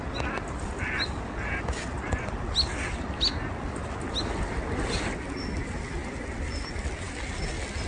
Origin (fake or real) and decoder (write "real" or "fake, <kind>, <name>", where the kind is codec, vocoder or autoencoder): real